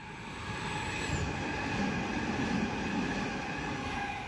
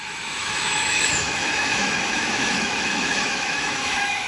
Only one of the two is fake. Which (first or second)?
second